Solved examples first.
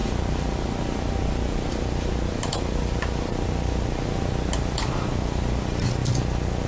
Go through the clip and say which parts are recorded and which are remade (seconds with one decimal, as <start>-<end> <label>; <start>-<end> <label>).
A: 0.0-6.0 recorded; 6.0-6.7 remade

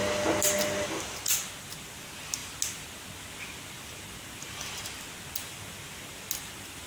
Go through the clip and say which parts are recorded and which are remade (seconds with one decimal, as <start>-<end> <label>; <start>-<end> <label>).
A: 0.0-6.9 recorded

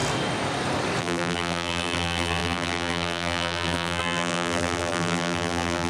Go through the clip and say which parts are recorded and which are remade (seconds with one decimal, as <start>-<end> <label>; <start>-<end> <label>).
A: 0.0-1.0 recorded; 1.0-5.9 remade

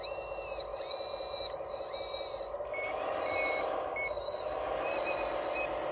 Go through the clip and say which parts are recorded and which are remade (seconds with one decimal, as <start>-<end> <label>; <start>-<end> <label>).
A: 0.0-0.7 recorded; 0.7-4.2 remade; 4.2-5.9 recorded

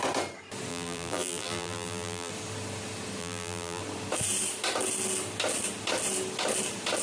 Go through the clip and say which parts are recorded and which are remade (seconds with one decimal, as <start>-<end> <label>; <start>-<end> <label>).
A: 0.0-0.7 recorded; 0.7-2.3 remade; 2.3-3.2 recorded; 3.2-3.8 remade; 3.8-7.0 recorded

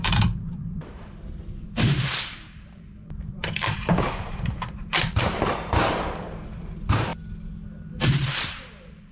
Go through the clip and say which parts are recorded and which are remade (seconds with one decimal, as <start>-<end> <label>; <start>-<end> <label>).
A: 0.0-7.1 remade; 7.1-7.9 recorded; 7.9-9.1 remade

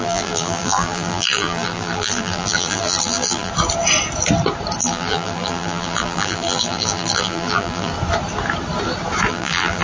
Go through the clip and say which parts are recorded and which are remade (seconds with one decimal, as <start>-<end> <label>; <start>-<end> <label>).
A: 0.0-3.5 remade; 3.5-4.8 recorded; 4.8-7.9 remade; 7.9-9.3 recorded; 9.3-9.8 remade